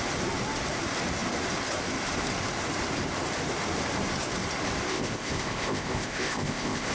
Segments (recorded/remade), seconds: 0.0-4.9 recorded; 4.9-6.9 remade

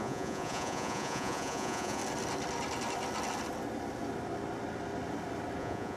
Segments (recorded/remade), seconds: 0.0-2.0 remade; 2.0-5.6 recorded; 5.6-6.0 remade

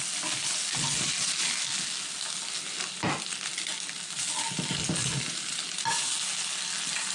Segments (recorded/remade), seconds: 0.0-7.1 recorded

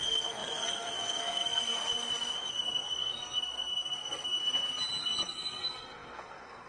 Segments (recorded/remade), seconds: 0.0-1.9 remade; 1.9-2.5 recorded; 2.5-4.4 remade; 4.4-5.0 recorded; 5.0-6.7 remade

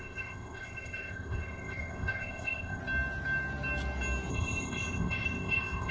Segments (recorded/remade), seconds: 0.0-2.8 remade; 2.8-4.3 recorded; 4.3-5.9 remade

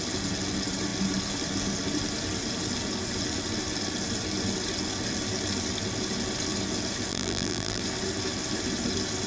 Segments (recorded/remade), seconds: 0.0-7.1 recorded; 7.1-7.8 remade; 7.8-9.3 recorded

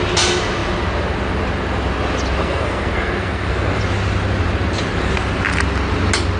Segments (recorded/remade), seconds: 0.0-2.4 recorded; 2.4-3.8 remade; 3.8-6.4 recorded